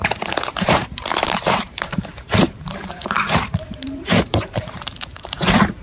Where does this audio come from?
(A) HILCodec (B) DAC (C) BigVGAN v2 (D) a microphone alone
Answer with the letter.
C